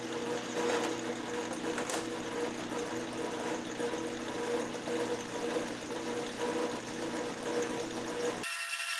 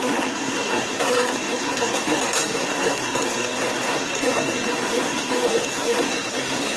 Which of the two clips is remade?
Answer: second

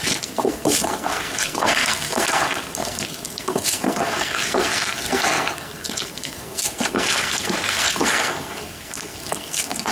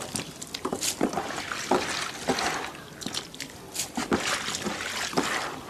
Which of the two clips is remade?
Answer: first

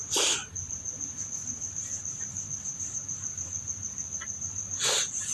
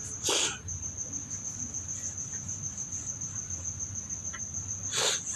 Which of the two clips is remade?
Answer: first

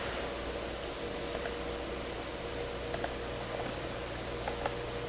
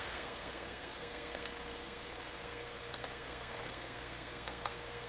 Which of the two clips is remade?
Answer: second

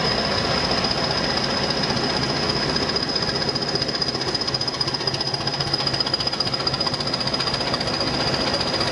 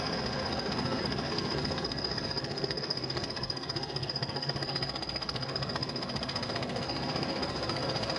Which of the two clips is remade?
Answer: second